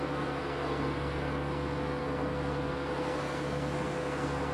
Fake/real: fake